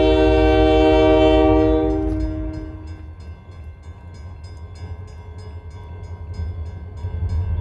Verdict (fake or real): real